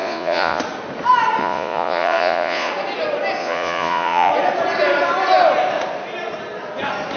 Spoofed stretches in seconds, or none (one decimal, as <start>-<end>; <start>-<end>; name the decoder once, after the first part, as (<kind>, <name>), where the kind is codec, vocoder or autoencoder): 0.0-0.6 (vocoder, Vocos); 1.4-2.7; 3.4-4.3